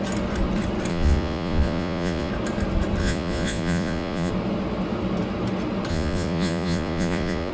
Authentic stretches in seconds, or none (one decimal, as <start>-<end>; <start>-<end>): 0.0-0.9; 2.3-3.0; 4.3-5.9